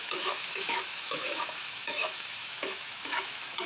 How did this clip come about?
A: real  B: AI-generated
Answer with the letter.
B